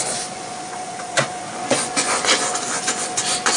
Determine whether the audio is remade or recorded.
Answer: remade